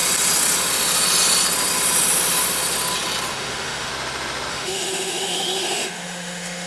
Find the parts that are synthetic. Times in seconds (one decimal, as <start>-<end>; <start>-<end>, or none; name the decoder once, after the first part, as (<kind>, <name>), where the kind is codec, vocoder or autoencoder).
3.3-3.9 (autoencoder, DAC-VAE); 4.5-6.7